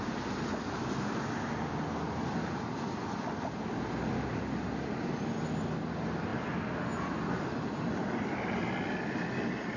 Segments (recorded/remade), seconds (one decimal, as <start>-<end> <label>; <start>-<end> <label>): 0.0-9.8 recorded